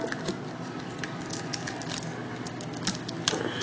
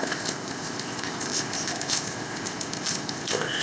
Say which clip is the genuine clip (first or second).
first